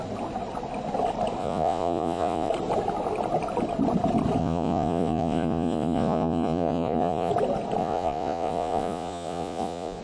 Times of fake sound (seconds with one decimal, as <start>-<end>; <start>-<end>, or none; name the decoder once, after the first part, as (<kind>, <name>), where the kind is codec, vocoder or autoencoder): 1.4-2.5 (vocoder, Vocos); 4.4-7.3; 7.8-10.0